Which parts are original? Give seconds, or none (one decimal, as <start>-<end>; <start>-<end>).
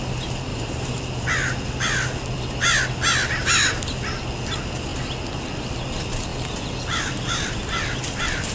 0.0-0.5; 1.0-8.5